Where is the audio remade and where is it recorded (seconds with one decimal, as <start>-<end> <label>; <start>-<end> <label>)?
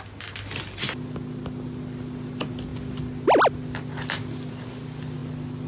0.0-5.7 recorded